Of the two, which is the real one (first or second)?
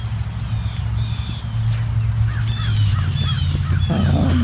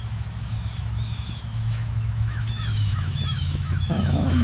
first